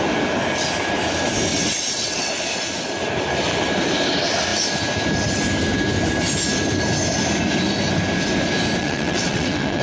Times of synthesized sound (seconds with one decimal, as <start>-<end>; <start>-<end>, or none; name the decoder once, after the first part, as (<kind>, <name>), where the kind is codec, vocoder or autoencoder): 1.5-2.3 (vocoder, WaveNeXt); 8.8-9.8